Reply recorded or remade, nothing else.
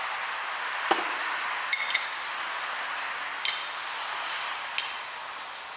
recorded